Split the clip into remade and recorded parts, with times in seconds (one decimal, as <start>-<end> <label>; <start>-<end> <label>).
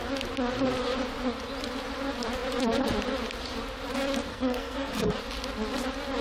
0.0-4.3 recorded; 4.3-5.1 remade; 5.1-6.2 recorded